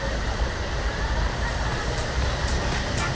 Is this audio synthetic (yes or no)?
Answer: yes